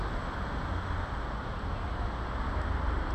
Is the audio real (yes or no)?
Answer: yes